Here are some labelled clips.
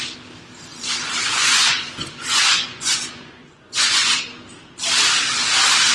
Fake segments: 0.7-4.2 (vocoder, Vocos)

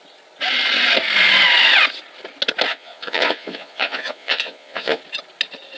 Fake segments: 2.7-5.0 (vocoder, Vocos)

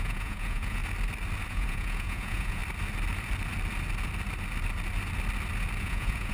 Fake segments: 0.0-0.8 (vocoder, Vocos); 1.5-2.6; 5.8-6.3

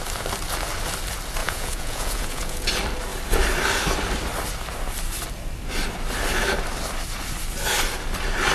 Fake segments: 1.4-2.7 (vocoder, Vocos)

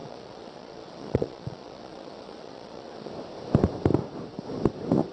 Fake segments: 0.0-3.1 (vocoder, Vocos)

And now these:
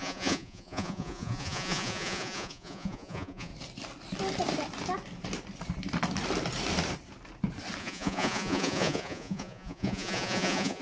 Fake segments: 0.0-3.5 (vocoder, Vocos); 7.8-10.8

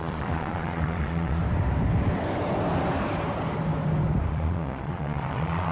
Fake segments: 0.0-1.4 (vocoder, Vocos); 4.3-5.7

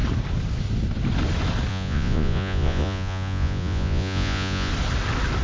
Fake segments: 1.7-4.7 (vocoder, Vocos)